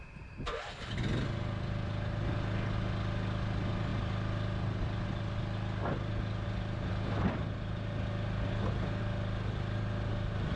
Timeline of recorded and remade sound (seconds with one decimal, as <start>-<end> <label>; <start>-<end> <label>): 0.0-10.6 recorded